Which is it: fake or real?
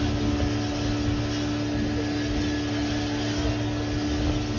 real